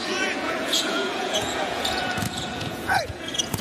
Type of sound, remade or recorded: remade